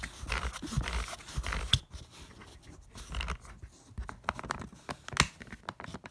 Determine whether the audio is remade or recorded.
recorded